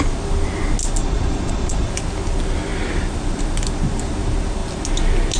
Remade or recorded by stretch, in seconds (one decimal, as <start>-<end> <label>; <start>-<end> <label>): 0.0-1.0 recorded; 1.0-1.9 remade; 1.9-5.4 recorded